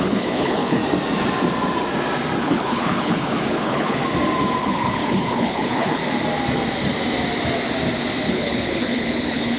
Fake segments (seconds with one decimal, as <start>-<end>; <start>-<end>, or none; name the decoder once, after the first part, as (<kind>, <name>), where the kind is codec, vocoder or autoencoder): 0.0-0.8 (codec, HILCodec); 2.4-4.0; 4.6-6.0; 8.3-9.6